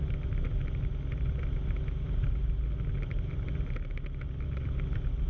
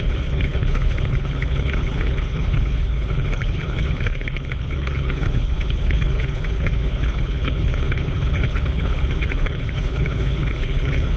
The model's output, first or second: second